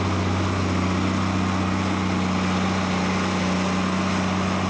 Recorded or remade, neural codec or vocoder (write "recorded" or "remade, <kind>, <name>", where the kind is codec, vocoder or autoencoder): recorded